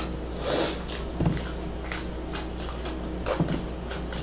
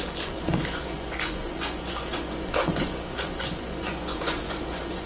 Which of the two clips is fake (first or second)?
second